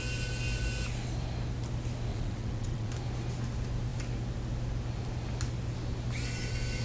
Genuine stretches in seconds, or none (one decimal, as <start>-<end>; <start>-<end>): 0.0-2.1; 2.9-6.8